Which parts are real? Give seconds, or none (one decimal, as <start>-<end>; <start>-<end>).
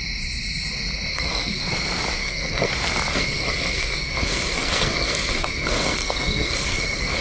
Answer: 0.0-1.1; 1.6-2.2; 2.7-3.1